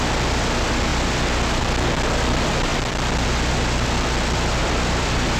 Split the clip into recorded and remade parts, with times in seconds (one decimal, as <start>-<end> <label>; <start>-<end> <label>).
0.0-2.7 recorded; 2.7-3.5 remade; 3.5-4.6 recorded; 4.6-5.4 remade